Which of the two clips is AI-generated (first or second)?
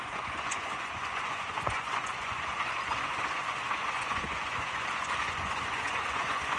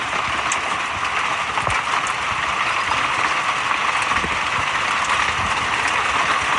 first